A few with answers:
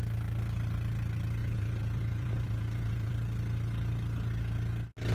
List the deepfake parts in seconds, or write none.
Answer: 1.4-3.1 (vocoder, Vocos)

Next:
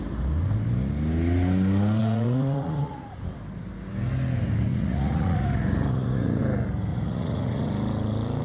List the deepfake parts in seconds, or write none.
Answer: 2.0-3.2 (vocoder, Vocos); 4.7-6.4; 6.9-7.7

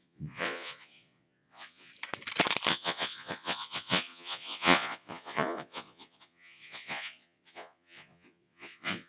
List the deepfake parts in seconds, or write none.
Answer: 0.0-1.9 (vocoder, Vocos); 2.7-9.1

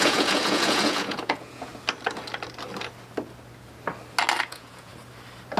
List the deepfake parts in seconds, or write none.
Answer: 0.0-1.7 (vocoder, Vocos); 4.4-4.9